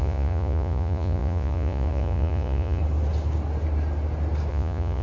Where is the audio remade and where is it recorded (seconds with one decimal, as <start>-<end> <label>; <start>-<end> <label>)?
0.0-2.8 remade; 2.8-4.5 recorded; 4.5-5.0 remade

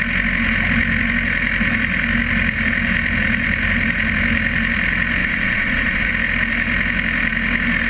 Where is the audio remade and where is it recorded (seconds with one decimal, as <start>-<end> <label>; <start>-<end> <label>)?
0.0-5.2 recorded; 5.2-6.1 remade; 6.1-7.9 recorded

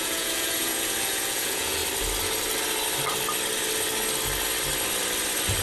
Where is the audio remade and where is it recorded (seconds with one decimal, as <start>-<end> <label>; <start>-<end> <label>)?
0.0-1.8 remade; 1.8-5.6 recorded

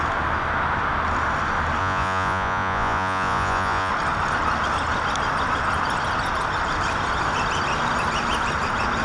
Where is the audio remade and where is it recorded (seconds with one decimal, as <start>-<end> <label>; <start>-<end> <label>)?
0.0-1.8 recorded; 1.8-3.9 remade; 3.9-9.0 recorded